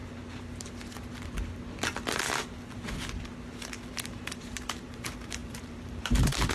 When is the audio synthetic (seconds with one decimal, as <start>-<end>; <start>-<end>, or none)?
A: 3.9-6.5